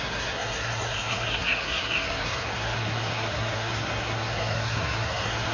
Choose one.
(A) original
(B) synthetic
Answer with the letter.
B